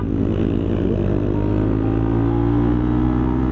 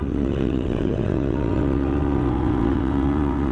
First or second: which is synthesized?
second